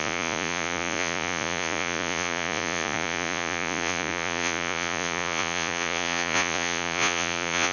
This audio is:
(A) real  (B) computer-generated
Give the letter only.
B